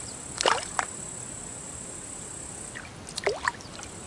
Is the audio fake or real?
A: real